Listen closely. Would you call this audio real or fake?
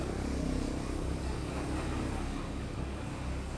fake